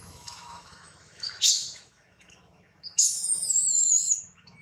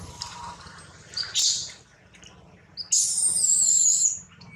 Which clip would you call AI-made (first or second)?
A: first